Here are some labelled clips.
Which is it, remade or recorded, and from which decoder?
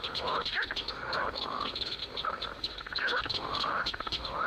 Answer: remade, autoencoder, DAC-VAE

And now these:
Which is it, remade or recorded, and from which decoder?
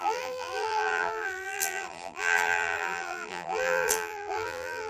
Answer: remade, vocoder, BigVGAN v2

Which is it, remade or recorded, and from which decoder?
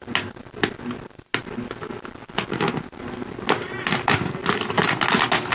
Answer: recorded